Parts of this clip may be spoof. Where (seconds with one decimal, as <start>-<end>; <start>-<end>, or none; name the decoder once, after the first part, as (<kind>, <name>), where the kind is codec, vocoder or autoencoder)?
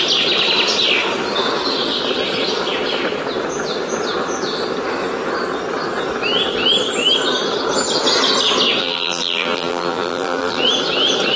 8.8-10.6 (vocoder, BigVGAN v2)